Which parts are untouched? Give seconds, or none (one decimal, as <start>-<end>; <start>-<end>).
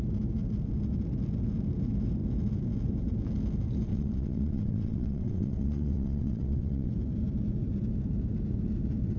0.0-3.9; 6.9-9.2